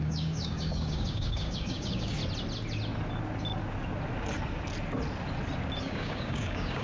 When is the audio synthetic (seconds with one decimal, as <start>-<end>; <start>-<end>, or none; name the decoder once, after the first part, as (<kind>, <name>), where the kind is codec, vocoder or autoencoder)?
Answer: 0.0-2.2 (codec, DAC); 5.8-6.8